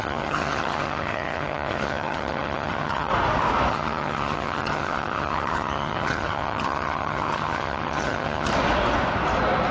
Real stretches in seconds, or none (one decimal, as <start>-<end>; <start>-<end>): 3.1-3.7; 8.5-9.7